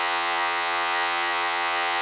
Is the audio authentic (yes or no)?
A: no